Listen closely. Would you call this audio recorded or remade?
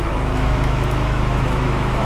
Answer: remade